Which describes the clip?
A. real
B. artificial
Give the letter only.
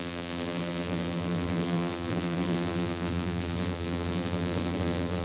B